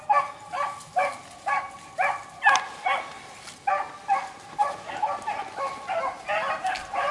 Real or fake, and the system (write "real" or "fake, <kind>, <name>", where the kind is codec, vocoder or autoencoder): real